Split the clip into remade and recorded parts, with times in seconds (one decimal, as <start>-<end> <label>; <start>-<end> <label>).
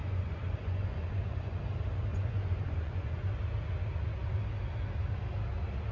0.0-1.6 remade; 1.6-2.1 recorded; 2.1-3.3 remade; 3.3-5.9 recorded